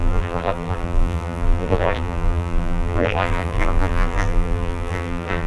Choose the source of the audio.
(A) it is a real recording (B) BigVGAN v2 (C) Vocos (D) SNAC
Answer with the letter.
B